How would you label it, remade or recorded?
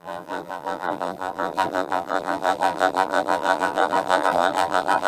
remade